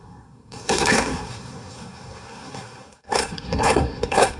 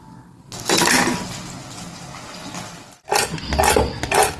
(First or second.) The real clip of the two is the second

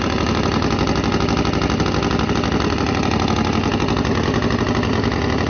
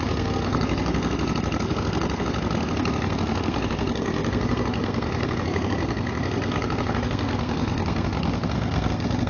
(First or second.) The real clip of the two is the first